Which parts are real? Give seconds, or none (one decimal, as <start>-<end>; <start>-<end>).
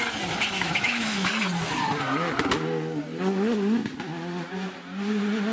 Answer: 0.0-0.5; 1.3-5.5